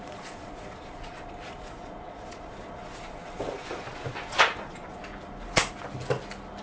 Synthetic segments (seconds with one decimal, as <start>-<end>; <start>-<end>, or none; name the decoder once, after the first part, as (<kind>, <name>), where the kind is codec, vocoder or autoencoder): 0.0-5.0 (vocoder, Vocos)